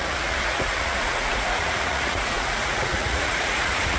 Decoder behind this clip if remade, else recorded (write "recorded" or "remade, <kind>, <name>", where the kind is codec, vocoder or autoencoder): remade, vocoder, Vocos